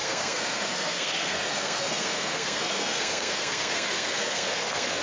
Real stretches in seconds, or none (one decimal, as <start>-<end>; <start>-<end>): none